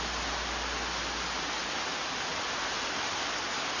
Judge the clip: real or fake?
real